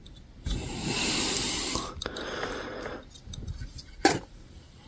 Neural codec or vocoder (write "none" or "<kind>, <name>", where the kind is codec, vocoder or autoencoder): none